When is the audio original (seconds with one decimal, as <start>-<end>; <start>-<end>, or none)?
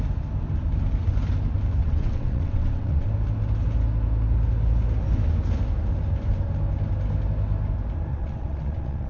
0.0-1.8; 3.1-8.1